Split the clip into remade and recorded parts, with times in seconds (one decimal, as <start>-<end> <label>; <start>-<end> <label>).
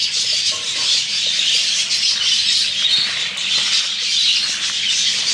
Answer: 0.0-5.3 recorded